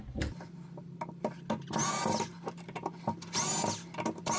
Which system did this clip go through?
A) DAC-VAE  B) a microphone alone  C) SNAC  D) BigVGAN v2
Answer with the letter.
B